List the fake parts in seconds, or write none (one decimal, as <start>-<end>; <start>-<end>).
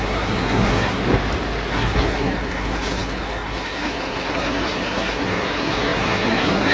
0.0-1.0; 1.7-6.7